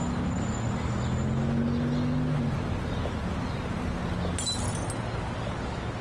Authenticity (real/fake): real